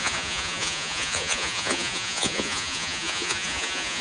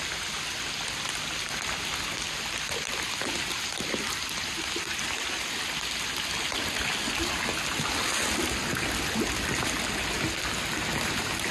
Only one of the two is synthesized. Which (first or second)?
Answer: first